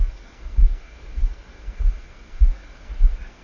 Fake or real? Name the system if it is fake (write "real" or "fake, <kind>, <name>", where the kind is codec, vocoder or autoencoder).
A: fake, codec, SNAC